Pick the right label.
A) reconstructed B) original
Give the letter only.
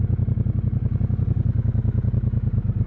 B